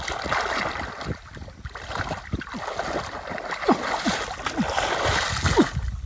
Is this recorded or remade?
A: recorded